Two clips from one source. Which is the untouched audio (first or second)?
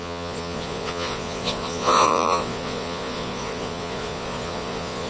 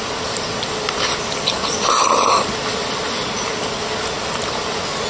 second